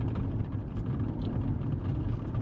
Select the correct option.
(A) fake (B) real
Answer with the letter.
B